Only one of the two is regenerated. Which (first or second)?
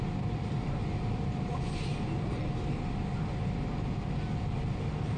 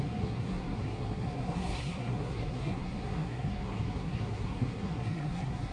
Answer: second